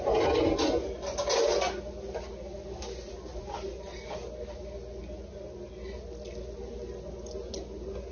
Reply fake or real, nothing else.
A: real